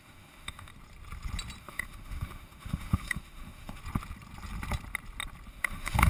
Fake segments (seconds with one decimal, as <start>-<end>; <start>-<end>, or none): 0.0-0.7; 1.6-3.8; 5.5-6.1